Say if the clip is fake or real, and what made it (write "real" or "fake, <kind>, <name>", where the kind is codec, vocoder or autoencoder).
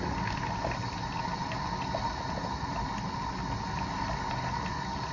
real